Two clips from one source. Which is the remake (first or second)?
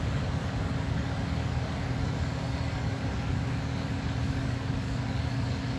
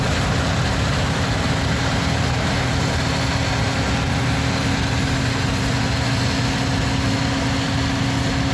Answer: first